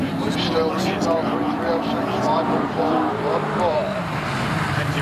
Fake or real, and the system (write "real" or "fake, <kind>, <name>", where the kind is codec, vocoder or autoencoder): fake, vocoder, BigVGAN v2